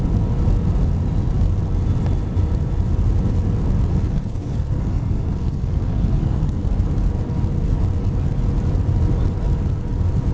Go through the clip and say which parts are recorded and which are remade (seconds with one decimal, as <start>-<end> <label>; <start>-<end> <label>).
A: 0.0-3.9 recorded; 3.9-6.7 remade; 6.7-10.3 recorded